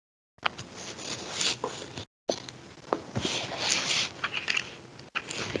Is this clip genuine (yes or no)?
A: yes